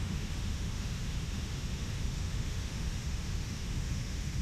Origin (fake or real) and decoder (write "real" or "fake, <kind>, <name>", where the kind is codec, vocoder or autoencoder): fake, autoencoder, DAC-VAE